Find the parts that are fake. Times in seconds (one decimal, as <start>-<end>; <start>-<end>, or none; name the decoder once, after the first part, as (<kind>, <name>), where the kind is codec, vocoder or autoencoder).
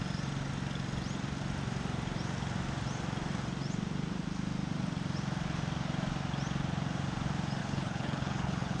7.6-8.8 (codec, HILCodec)